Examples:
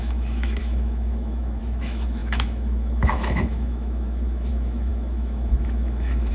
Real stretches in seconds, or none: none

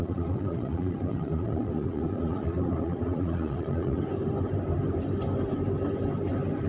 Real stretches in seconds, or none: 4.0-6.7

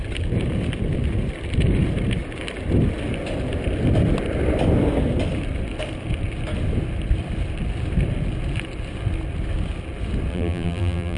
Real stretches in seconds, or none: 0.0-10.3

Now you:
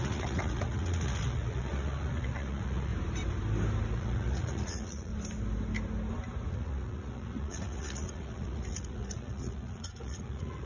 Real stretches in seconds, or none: 2.9-3.9; 5.1-6.5

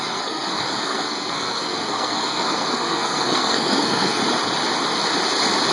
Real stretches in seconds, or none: 4.2-5.7

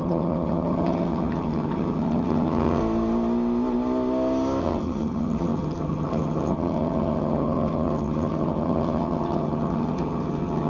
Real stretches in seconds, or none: 2.8-4.6